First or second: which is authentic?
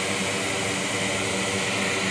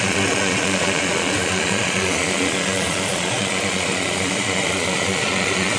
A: first